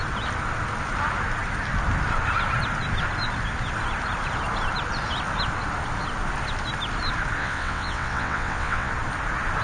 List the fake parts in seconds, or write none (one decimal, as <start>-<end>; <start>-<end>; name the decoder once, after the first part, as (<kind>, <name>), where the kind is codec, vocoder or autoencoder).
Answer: 7.4-8.9 (vocoder, WaveNeXt)